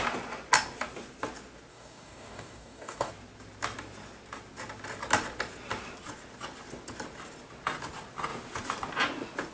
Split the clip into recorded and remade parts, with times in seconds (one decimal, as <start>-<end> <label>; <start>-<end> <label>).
0.0-1.7 recorded; 1.7-3.1 remade; 3.1-9.5 recorded